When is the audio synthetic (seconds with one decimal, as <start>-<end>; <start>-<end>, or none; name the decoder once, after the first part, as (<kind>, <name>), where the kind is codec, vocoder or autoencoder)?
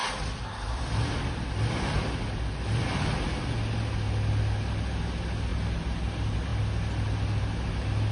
none